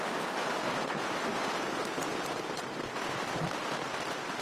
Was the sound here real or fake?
real